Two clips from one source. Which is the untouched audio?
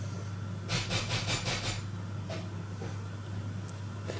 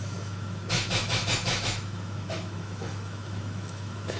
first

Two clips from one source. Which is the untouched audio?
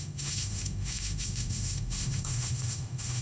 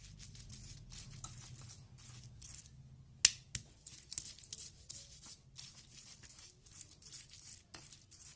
second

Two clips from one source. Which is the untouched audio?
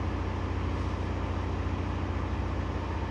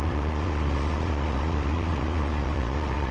first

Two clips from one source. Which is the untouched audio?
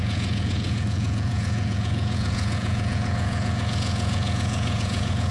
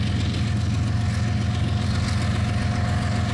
second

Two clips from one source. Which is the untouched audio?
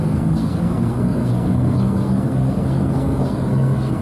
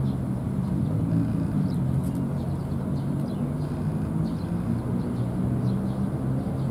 second